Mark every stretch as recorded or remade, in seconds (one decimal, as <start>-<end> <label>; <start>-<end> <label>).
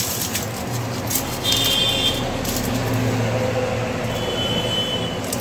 0.0-5.4 recorded